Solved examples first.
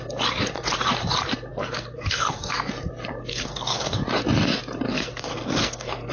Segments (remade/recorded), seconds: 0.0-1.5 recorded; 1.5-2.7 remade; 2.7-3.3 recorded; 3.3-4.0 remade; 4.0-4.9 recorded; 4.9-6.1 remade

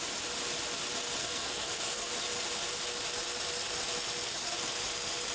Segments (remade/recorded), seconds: 0.0-1.2 recorded; 1.2-2.1 remade; 2.1-5.3 recorded